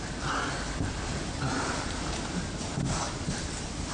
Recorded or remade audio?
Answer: remade